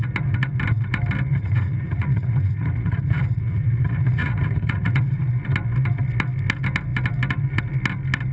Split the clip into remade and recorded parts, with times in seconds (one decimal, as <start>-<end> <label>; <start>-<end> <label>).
0.0-1.3 recorded; 1.3-5.3 remade; 5.3-8.3 recorded